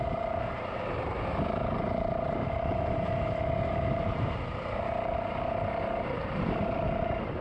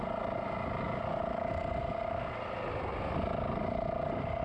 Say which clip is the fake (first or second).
first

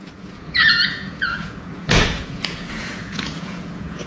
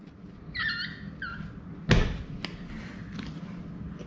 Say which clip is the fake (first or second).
first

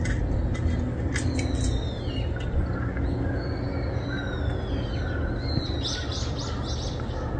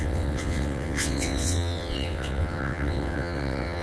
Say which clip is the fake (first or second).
second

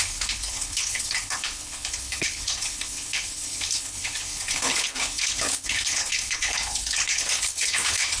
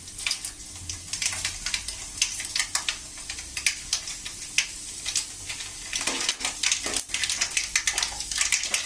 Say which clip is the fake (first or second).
first